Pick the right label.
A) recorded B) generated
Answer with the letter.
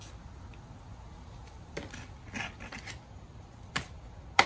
A